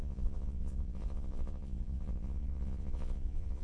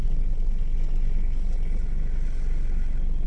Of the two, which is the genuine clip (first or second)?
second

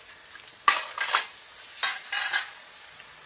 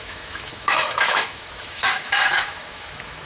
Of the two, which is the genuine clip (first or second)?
first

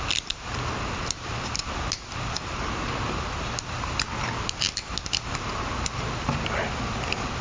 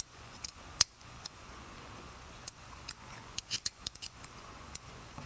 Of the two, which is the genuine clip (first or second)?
first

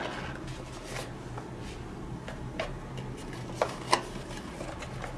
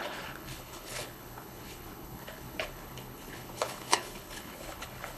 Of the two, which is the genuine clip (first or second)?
first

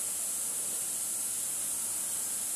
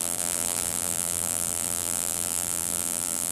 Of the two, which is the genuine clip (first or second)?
first